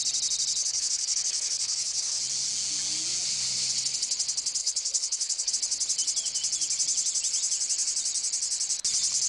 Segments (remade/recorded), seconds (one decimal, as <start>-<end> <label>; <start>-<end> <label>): 0.0-0.6 recorded; 0.6-2.2 remade; 2.2-4.6 recorded; 4.6-5.5 remade; 5.5-9.3 recorded